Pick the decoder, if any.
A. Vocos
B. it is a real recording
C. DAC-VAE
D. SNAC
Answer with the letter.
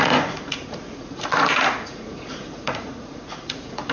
A